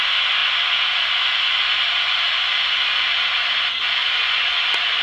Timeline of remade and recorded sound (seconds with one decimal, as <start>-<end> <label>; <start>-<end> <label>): 0.0-4.0 recorded; 4.0-4.6 remade; 4.6-5.0 recorded

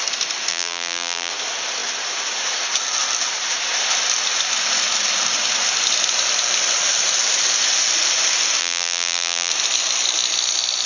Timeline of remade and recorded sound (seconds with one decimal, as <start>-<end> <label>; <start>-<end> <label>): 0.0-0.5 recorded; 0.5-1.3 remade; 1.3-8.6 recorded; 8.6-9.5 remade; 9.5-10.9 recorded